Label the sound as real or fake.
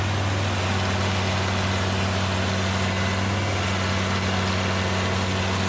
real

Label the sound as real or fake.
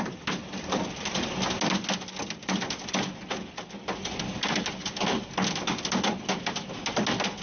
real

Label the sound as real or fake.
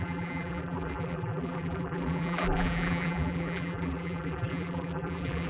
fake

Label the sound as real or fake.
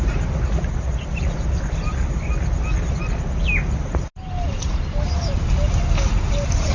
real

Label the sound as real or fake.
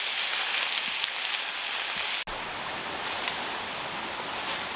real